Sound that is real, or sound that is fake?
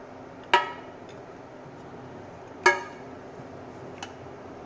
real